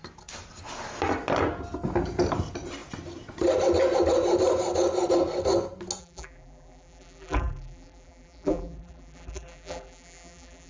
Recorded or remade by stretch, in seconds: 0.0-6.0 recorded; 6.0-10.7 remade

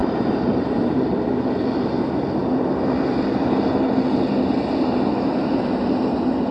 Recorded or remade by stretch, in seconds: 0.0-1.1 remade; 1.1-6.5 recorded

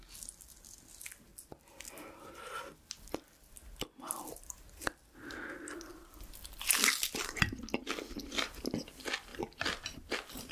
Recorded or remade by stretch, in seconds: 0.0-10.5 recorded

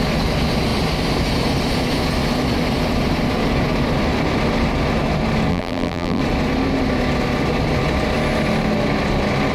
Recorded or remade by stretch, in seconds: 0.0-5.5 recorded; 5.5-6.2 remade; 6.2-9.5 recorded

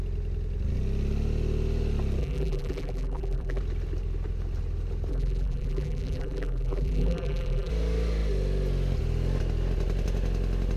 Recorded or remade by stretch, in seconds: 0.0-2.2 recorded; 2.2-3.6 remade; 3.6-5.1 recorded; 5.1-7.7 remade; 7.7-10.8 recorded

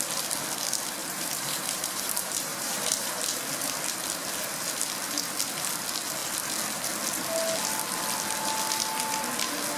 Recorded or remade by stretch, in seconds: 0.0-1.0 recorded; 1.0-3.1 remade; 3.1-9.8 recorded